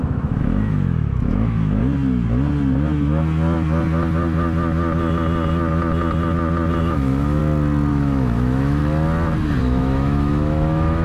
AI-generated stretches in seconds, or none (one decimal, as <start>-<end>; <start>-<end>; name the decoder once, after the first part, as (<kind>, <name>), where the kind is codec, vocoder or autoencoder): 0.0-1.8 (autoencoder, DAC-VAE); 6.8-7.4; 7.9-8.8; 9.6-11.0

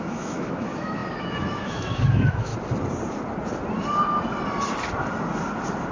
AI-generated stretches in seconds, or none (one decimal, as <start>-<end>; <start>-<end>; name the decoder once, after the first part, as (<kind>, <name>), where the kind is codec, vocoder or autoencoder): 0.0-2.5 (autoencoder, DAC-VAE)